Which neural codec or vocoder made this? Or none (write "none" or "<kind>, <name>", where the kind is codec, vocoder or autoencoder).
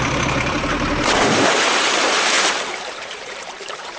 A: vocoder, BigVGAN v2